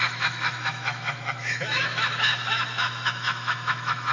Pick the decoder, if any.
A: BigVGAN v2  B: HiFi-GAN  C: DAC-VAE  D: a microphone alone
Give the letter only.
C